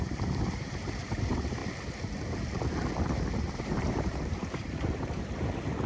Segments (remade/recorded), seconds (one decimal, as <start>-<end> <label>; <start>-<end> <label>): 0.0-1.6 remade; 1.6-3.4 recorded; 3.4-5.9 remade